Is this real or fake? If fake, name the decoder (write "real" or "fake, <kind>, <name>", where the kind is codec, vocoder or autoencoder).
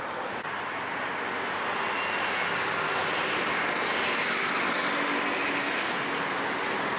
real